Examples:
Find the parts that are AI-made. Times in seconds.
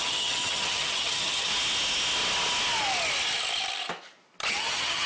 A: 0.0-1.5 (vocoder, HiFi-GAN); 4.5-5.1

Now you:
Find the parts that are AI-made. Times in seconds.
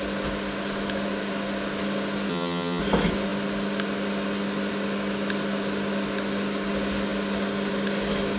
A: 2.3-2.8 (vocoder, HiFi-GAN)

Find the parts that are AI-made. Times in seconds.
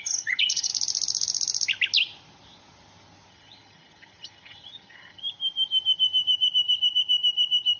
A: 0.0-0.7 (vocoder, HiFi-GAN); 3.3-5.2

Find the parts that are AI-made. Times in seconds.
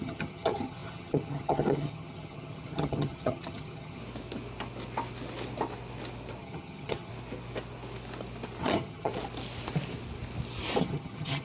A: 0.0-4.0 (vocoder, HiFi-GAN); 6.4-7.1; 8.6-9.1; 10.8-11.4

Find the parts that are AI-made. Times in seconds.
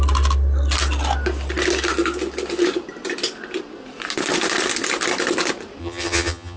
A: 5.8-6.6 (vocoder, HiFi-GAN)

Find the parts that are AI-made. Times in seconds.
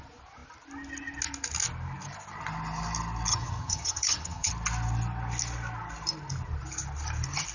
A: 3.3-4.5 (vocoder, HiFi-GAN)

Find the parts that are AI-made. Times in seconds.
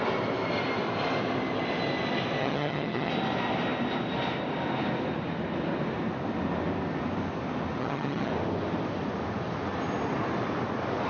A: 2.4-3.1 (vocoder, HiFi-GAN); 7.8-8.3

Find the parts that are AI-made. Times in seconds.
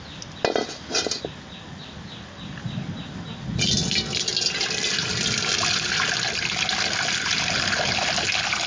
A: none